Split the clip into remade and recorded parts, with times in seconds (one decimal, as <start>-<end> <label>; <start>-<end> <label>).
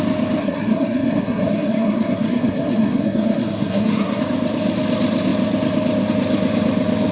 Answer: 0.0-0.4 recorded; 0.4-4.2 remade; 4.2-7.1 recorded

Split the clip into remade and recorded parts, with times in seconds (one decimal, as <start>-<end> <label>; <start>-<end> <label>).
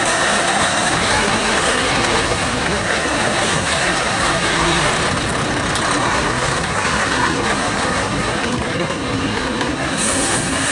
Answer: 0.0-4.9 remade; 4.9-6.0 recorded; 6.0-10.7 remade